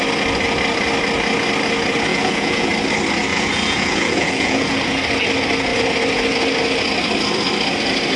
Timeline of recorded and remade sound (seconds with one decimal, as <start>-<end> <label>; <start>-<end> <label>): 0.0-2.1 recorded; 2.1-2.7 remade; 2.7-3.3 recorded; 3.3-4.8 remade; 4.8-8.2 recorded